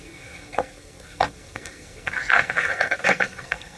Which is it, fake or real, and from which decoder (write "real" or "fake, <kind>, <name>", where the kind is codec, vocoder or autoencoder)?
fake, codec, SNAC